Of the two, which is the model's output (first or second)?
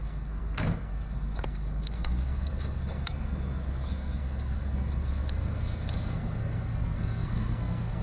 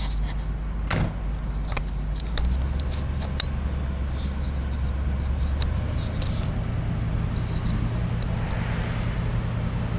first